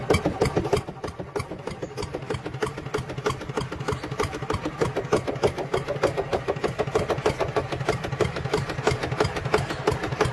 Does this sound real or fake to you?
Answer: real